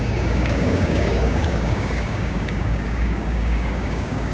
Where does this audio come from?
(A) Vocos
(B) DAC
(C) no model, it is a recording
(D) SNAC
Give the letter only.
B